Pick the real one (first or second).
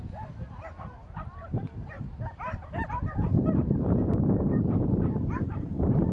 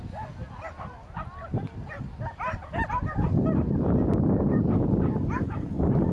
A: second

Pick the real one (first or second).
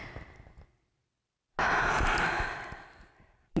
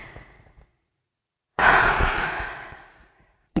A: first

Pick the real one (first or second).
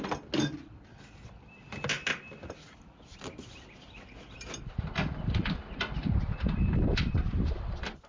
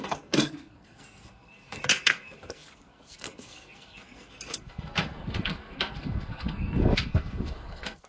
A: first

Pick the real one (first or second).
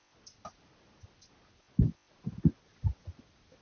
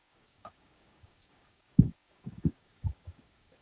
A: first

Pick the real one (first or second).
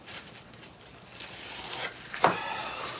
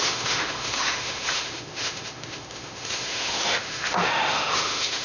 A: first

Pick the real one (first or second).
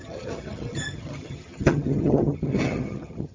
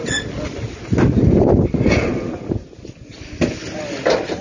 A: second